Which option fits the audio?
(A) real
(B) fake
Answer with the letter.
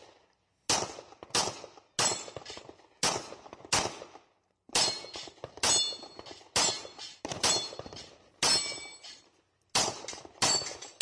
A